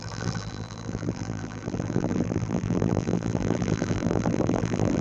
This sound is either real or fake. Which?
fake